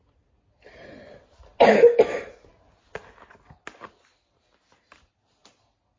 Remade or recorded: recorded